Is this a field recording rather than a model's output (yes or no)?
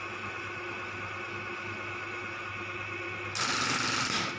yes